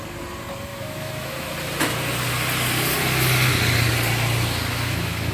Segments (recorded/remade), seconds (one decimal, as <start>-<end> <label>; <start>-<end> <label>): 0.0-0.7 recorded; 0.7-1.5 remade; 1.5-4.7 recorded; 4.7-5.3 remade